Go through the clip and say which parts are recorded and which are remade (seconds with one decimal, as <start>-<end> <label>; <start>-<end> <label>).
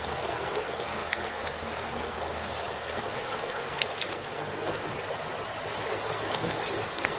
0.0-4.9 remade; 4.9-5.9 recorded; 5.9-7.2 remade